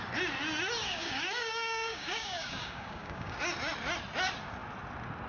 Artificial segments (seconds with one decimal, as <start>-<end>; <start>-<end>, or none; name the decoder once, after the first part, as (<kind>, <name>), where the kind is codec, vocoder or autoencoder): 0.8-3.4 (codec, DAC)